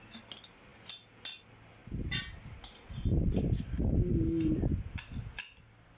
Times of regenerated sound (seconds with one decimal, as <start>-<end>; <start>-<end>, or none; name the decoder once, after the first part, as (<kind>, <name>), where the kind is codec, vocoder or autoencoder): none